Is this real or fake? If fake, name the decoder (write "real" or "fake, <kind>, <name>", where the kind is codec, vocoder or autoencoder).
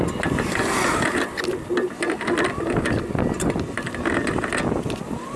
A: real